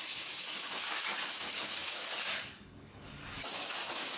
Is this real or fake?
fake